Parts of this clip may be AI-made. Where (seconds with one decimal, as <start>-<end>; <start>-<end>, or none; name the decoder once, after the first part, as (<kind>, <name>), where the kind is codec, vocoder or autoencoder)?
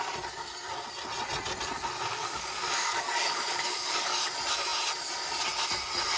2.1-4.3 (codec, DAC)